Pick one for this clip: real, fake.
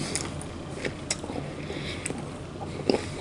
real